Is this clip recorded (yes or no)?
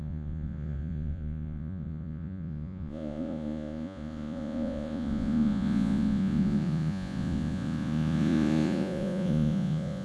no